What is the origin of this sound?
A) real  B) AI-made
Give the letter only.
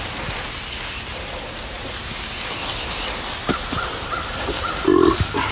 A